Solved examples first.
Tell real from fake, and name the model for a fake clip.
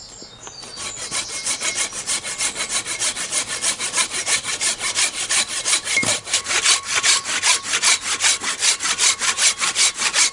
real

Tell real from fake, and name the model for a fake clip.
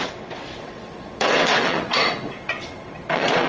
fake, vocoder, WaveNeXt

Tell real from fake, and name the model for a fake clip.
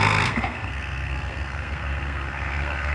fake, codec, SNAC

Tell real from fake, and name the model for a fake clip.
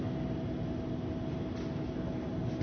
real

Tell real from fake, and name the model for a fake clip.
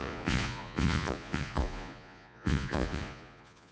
fake, vocoder, Vocos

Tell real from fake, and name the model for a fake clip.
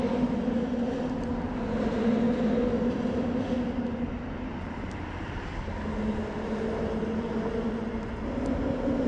real